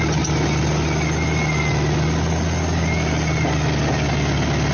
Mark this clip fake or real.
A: real